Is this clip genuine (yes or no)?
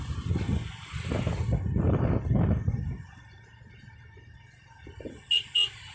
yes